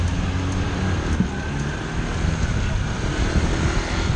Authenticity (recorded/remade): recorded